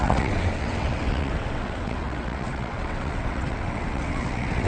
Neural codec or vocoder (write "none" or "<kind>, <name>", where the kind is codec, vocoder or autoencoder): vocoder, WaveNeXt